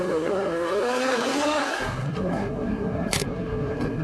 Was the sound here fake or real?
fake